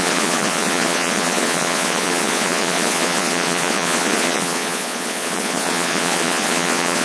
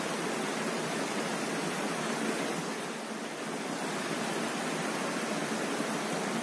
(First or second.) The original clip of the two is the second